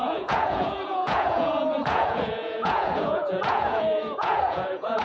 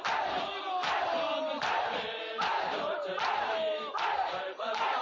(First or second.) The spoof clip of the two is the first